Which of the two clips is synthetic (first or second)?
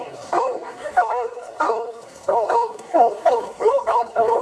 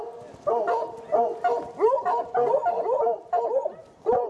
first